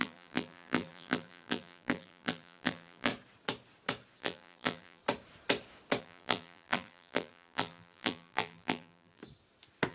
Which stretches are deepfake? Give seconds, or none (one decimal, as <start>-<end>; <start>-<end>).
0.0-3.1; 4.2-5.0; 6.0-9.2